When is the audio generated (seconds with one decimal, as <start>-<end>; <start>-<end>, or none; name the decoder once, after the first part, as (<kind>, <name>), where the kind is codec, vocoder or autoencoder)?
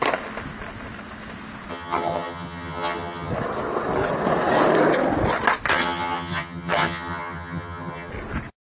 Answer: 1.7-3.3 (vocoder, HiFi-GAN); 5.7-8.1